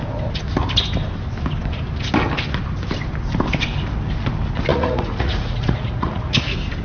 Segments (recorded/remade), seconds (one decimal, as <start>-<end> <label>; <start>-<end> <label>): 0.0-4.7 recorded; 4.7-6.3 remade; 6.3-6.8 recorded

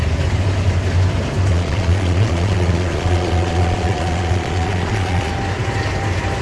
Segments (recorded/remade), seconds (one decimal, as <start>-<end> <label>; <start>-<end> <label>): 0.0-1.5 recorded; 1.5-5.3 remade; 5.3-6.4 recorded

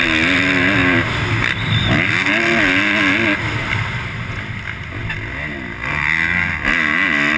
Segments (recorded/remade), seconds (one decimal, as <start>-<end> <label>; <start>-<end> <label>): 0.0-7.4 recorded

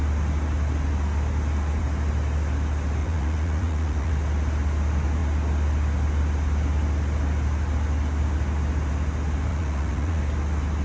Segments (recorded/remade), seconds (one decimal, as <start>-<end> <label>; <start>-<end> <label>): 0.0-3.0 recorded; 3.0-4.1 remade; 4.1-9.5 recorded; 9.5-10.2 remade; 10.2-10.8 recorded

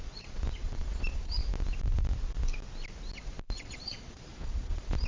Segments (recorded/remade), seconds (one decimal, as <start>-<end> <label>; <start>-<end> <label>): 0.0-1.4 remade; 1.4-3.4 recorded; 3.4-5.1 remade

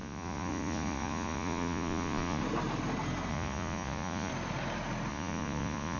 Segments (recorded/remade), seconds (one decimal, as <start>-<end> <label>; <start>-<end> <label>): 0.0-2.4 remade; 2.4-3.3 recorded; 3.3-4.3 remade; 4.3-5.1 recorded; 5.1-6.0 remade

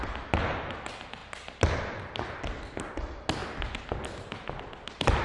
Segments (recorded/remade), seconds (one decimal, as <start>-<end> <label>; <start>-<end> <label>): 0.0-5.2 recorded